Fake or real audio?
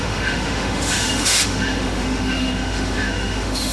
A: fake